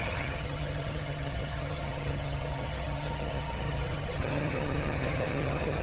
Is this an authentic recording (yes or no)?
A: no